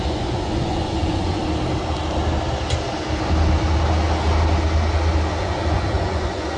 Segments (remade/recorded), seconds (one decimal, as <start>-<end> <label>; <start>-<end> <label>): 0.0-1.4 remade; 1.4-5.4 recorded; 5.4-6.6 remade